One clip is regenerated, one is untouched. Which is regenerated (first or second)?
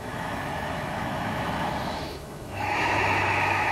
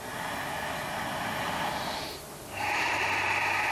first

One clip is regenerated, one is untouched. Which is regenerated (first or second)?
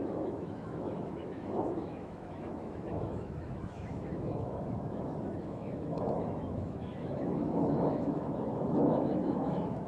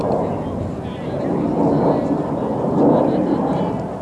first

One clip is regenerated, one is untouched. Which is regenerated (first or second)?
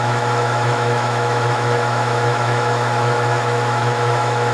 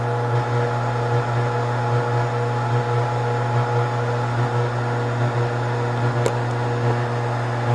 first